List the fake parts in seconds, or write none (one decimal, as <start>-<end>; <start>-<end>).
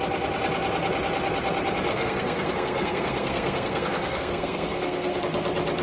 1.9-5.2